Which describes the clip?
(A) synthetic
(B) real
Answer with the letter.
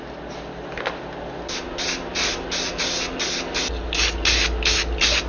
B